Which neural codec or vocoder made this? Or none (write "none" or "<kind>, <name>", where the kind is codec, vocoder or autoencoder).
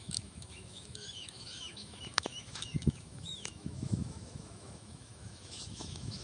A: autoencoder, DAC-VAE